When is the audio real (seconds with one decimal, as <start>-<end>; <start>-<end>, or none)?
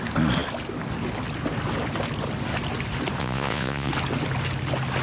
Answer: 0.0-3.2; 3.9-5.0